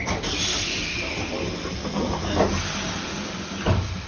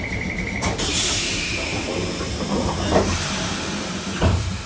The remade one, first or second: second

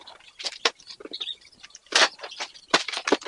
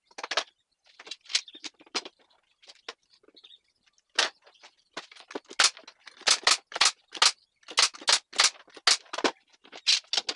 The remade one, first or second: first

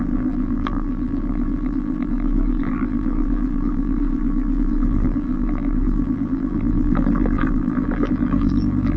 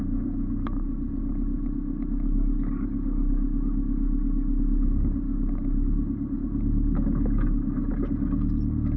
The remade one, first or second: first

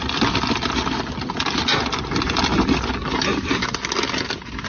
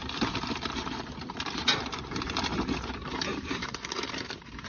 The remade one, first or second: second